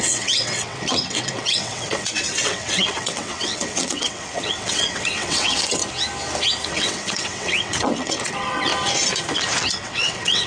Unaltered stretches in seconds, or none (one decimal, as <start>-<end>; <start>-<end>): 5.8-6.7; 8.7-9.8